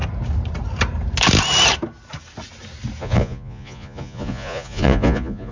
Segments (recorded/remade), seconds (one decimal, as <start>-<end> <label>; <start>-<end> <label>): 0.0-3.0 recorded; 3.0-5.5 remade